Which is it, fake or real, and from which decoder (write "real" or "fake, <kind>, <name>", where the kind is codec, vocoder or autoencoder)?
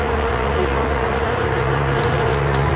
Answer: fake, vocoder, Vocos